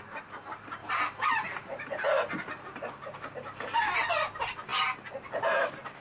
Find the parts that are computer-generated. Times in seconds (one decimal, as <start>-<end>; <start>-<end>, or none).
0.8-4.1